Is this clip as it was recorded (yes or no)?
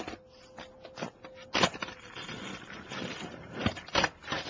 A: yes